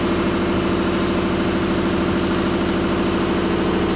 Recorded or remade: recorded